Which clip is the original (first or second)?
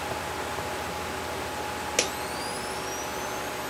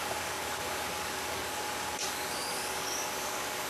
first